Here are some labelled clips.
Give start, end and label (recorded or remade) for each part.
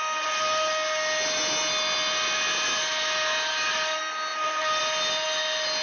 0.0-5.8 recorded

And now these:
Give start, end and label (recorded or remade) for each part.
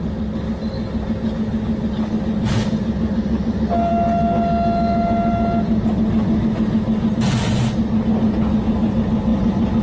0.0-9.8 recorded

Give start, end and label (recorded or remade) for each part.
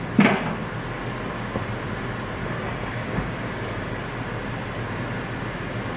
0.0-2.4 recorded; 2.4-4.0 remade; 4.0-6.0 recorded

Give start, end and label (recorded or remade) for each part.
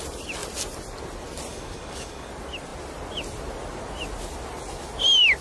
0.0-1.5 recorded; 1.5-2.3 remade; 2.3-5.4 recorded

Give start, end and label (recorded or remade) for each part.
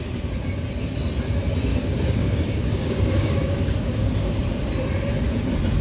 0.0-1.7 recorded; 1.7-4.4 remade; 4.4-5.8 recorded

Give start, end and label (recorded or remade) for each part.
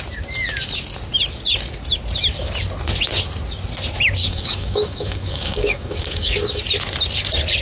0.0-4.2 recorded; 4.2-6.6 remade; 6.6-7.6 recorded